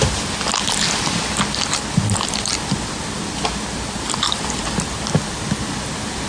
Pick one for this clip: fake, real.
real